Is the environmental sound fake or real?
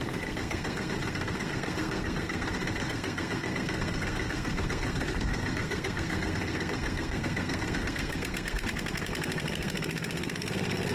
fake